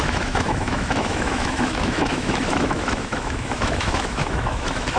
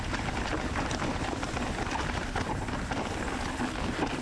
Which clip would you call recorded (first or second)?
second